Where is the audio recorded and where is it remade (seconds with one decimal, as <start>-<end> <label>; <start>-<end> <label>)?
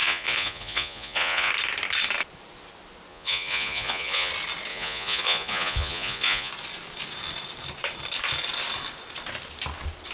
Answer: 0.0-1.5 remade; 1.5-3.1 recorded; 3.1-4.3 remade; 4.3-4.7 recorded; 4.7-6.5 remade; 6.5-10.1 recorded